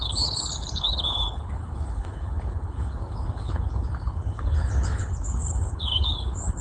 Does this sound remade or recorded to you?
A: remade